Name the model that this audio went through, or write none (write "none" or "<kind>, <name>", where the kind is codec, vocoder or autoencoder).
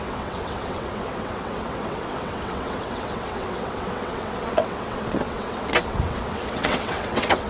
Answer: vocoder, WaveNeXt